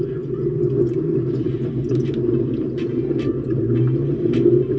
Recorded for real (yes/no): yes